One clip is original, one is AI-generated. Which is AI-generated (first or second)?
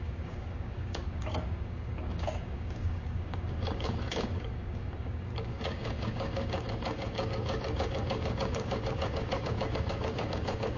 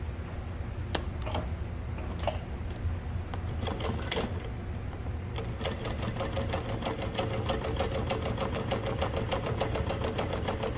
first